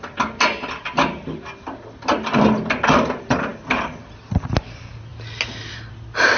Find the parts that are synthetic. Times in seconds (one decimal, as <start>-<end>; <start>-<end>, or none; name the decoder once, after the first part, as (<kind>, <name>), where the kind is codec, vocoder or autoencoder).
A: none